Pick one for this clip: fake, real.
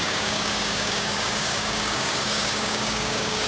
fake